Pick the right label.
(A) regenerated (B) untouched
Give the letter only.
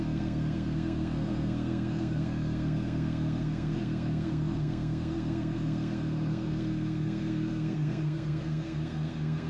A